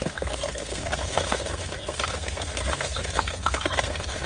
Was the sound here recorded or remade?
remade